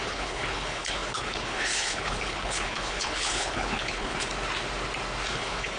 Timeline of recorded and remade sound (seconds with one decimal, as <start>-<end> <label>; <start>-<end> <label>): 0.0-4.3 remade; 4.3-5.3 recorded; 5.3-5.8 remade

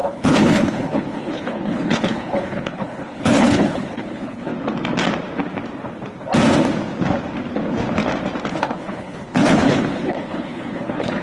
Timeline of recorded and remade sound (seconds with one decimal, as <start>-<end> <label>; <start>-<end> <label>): 0.0-4.5 remade; 4.5-8.5 recorded; 8.5-11.2 remade

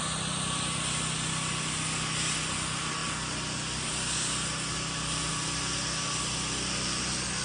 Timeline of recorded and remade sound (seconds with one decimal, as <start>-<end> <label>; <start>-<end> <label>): 0.0-7.4 recorded

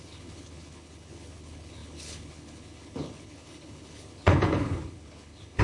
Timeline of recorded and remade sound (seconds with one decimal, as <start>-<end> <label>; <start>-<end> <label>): 0.0-5.6 remade

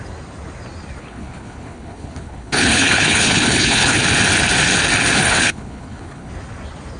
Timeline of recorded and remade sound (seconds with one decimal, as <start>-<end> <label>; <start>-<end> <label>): 0.0-1.0 recorded; 1.0-4.0 remade; 4.0-5.2 recorded; 5.2-6.3 remade; 6.3-7.0 recorded